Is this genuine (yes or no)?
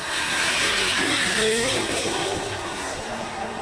no